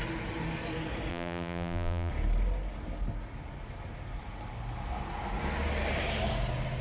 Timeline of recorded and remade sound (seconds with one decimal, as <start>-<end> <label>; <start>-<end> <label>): 0.0-1.1 recorded; 1.1-2.1 remade; 2.1-6.8 recorded